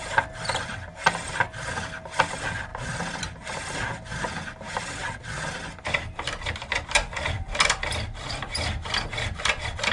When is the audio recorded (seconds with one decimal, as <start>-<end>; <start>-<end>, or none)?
0.0-9.9